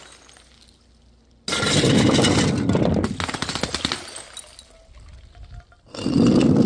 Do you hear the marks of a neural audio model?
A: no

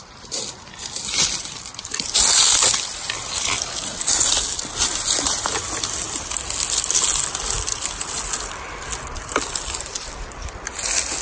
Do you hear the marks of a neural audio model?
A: no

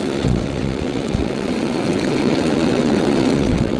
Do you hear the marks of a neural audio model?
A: yes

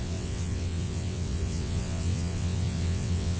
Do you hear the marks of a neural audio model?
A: yes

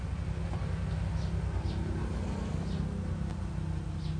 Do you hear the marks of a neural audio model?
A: no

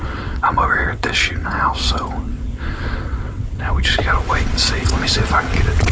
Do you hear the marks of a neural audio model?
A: yes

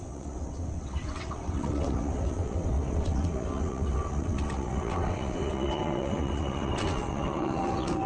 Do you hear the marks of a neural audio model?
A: yes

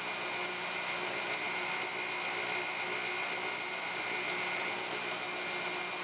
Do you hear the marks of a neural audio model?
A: no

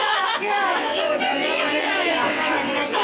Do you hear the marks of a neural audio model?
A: yes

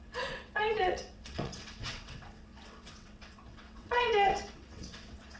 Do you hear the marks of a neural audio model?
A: yes